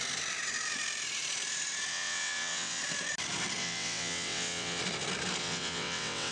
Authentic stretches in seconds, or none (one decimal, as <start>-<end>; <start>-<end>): 0.0-1.9; 2.8-3.6; 4.8-5.4